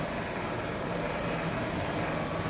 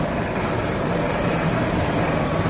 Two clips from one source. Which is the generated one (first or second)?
second